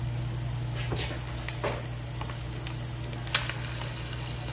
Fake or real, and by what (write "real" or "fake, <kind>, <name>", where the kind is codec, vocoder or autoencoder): real